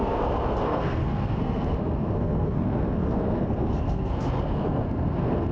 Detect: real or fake fake